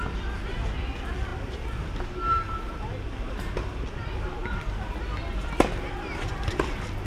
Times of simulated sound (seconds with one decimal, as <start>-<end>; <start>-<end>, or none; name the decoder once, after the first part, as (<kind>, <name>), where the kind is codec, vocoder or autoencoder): none